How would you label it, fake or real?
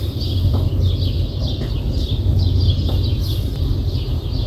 real